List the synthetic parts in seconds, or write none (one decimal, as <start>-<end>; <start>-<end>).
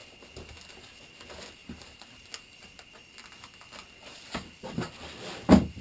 1.6-2.3